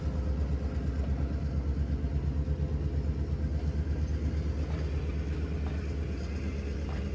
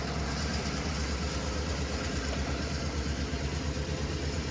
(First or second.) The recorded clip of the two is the first